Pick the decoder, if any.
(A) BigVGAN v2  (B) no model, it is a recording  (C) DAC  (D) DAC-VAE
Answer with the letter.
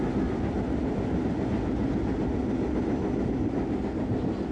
B